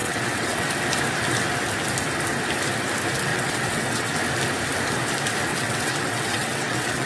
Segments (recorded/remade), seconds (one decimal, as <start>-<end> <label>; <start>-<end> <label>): 0.0-0.7 remade; 0.7-3.3 recorded; 3.3-4.1 remade; 4.1-5.5 recorded; 5.5-7.1 remade